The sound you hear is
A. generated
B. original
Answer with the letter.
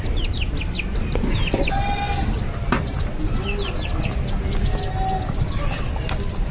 B